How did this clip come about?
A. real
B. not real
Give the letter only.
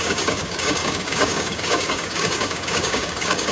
B